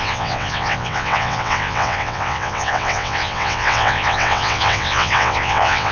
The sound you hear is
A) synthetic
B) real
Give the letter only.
A